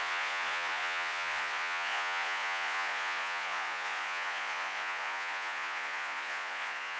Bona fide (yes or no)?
no